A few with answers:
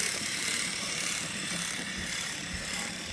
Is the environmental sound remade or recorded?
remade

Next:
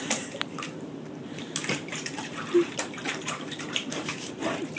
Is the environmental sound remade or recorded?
remade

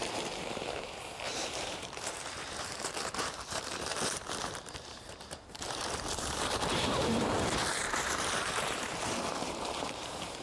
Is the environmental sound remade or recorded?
remade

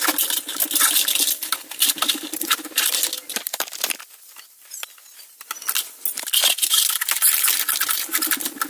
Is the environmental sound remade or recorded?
recorded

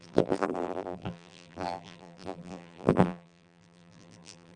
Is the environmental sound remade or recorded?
remade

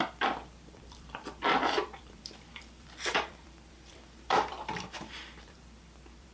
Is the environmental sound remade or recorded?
remade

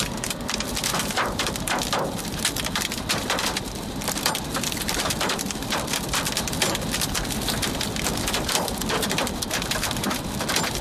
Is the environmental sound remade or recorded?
remade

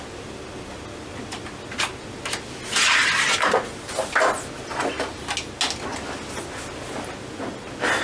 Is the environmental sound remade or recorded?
recorded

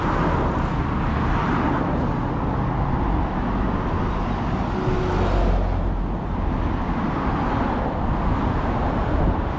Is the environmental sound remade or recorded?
recorded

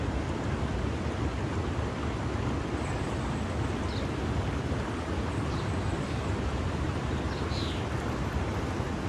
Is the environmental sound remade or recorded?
recorded